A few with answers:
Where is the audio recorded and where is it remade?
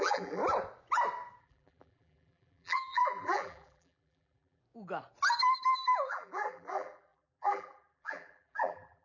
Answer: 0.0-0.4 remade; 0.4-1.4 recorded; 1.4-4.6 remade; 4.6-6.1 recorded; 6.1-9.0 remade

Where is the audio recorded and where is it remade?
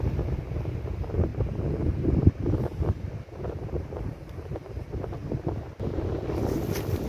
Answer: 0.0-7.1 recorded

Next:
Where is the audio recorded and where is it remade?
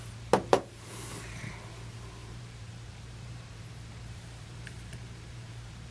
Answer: 0.0-2.2 recorded; 2.2-5.9 remade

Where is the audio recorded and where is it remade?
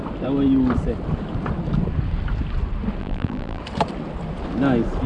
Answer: 0.0-3.0 recorded; 3.0-3.6 remade; 3.6-5.1 recorded